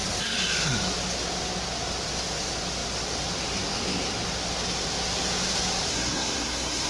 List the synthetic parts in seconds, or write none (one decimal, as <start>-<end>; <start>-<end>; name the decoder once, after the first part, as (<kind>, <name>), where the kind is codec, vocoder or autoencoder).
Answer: 5.9-6.9 (codec, SNAC)